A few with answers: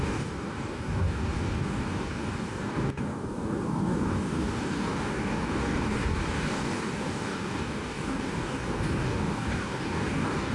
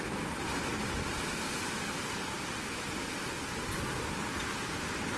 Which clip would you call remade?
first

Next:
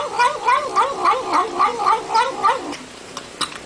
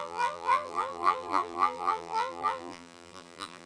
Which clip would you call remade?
second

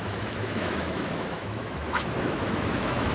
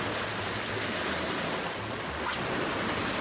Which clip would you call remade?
first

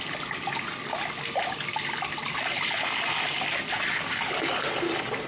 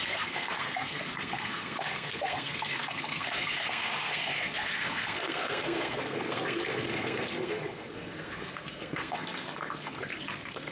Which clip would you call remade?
second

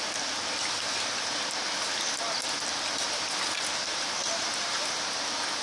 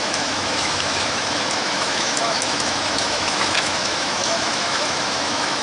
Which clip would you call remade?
second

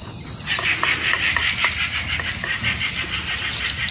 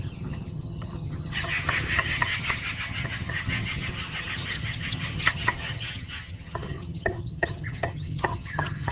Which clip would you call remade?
second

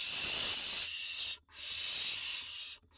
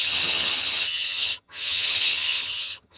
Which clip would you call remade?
second